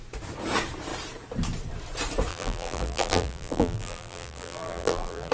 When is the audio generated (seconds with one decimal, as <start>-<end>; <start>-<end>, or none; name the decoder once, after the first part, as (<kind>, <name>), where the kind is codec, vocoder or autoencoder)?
2.3-5.3 (vocoder, BigVGAN v2)